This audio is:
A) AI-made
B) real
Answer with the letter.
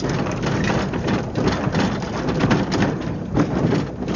B